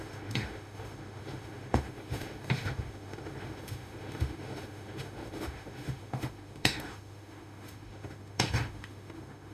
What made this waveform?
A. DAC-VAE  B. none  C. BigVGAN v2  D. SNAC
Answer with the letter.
A